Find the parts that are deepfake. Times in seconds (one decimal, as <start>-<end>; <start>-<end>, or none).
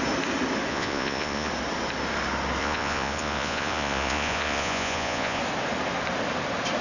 0.7-1.5; 2.6-5.4